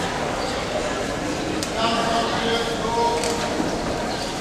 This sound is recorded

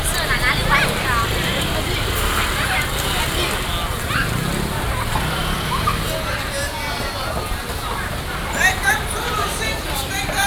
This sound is recorded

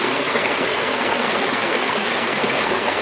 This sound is remade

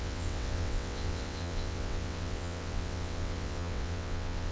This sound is remade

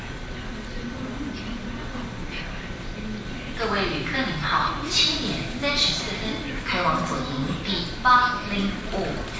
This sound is recorded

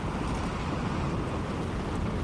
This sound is recorded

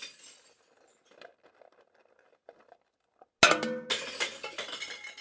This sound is recorded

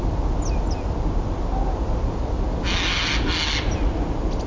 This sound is recorded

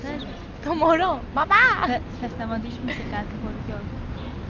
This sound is recorded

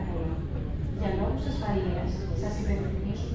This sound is recorded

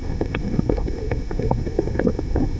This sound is remade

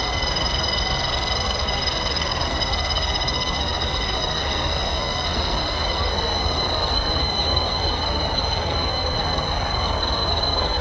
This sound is remade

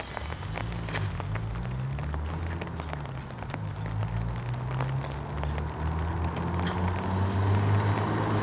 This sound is recorded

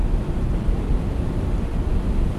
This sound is recorded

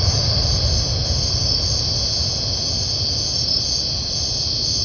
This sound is recorded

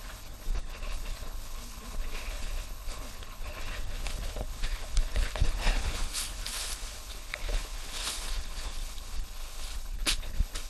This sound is remade